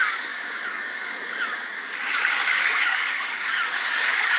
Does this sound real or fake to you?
fake